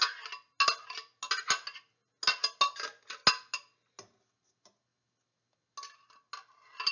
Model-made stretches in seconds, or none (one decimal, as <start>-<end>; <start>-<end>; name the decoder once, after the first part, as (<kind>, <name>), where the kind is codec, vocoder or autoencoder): none